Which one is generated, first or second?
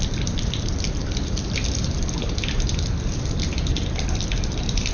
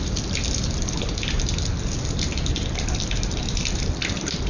first